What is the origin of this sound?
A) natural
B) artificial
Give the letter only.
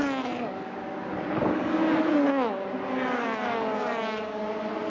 B